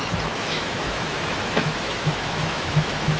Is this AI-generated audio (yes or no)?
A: yes